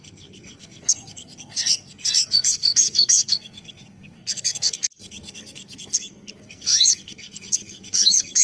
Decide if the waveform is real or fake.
fake